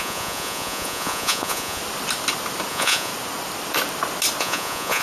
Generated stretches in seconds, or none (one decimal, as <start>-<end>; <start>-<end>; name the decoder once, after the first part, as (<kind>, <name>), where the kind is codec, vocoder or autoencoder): 0.0-1.8 (vocoder, Vocos); 2.7-3.1; 4.4-5.0